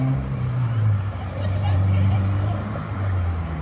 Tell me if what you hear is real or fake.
fake